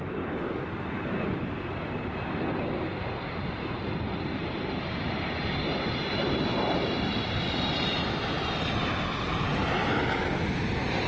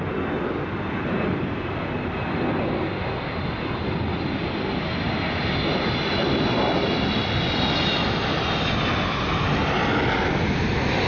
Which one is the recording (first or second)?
second